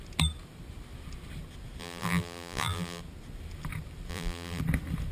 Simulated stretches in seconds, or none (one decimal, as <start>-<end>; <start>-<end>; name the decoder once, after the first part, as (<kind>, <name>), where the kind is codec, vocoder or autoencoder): 1.8-3.0 (vocoder, BigVGAN v2); 4.1-4.6